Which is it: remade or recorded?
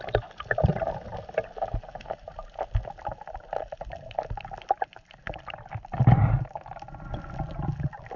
recorded